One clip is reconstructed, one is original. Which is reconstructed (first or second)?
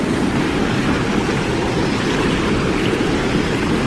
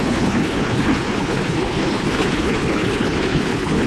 second